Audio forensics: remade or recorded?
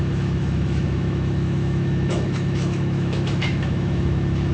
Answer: remade